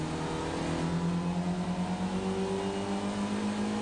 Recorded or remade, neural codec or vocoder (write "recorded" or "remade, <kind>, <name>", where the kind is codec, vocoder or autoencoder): recorded